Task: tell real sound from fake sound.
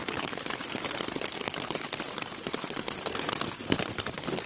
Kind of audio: real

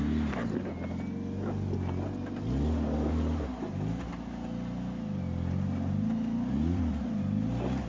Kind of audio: real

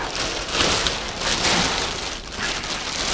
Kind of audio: real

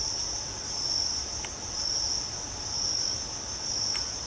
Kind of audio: real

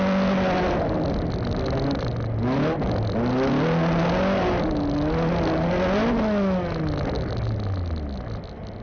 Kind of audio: real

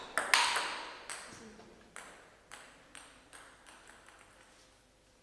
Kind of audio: real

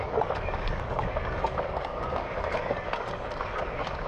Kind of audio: fake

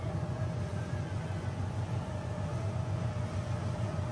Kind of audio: fake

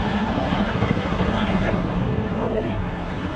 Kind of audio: fake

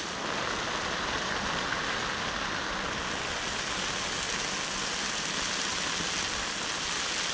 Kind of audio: real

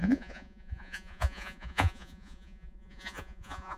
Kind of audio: fake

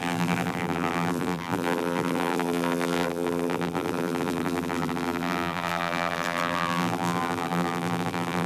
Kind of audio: fake